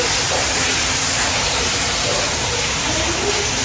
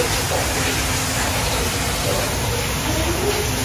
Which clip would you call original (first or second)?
second